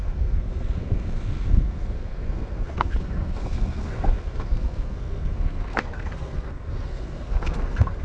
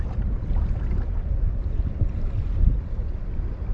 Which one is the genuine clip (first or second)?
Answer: second